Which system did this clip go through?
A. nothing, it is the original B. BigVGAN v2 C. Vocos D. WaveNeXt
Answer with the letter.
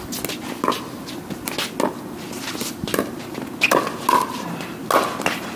A